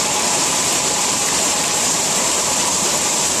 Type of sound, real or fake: fake